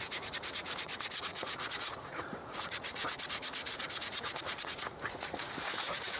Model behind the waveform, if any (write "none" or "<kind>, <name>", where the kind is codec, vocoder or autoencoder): vocoder, Vocos